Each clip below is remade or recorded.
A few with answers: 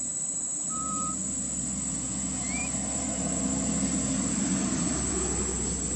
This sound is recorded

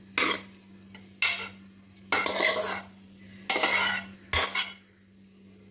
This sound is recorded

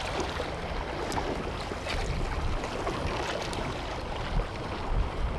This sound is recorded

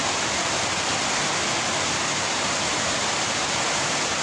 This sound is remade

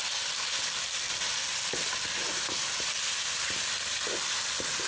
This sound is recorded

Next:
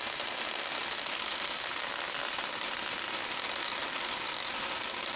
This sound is recorded